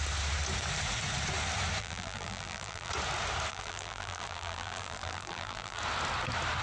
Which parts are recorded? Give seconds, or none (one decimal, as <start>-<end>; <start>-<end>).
0.0-1.8; 2.9-3.5; 5.8-6.6